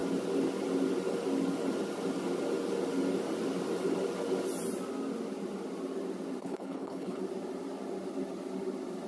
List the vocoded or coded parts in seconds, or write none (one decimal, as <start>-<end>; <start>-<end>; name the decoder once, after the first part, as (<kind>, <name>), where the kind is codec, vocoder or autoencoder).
6.4-7.2 (codec, HILCodec)